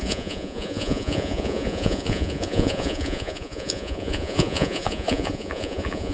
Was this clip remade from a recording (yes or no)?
yes